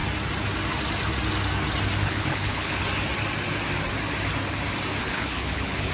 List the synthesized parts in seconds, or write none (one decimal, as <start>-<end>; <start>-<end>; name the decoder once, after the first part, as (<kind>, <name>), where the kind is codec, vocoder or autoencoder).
2.0-2.8 (codec, HILCodec); 5.0-5.9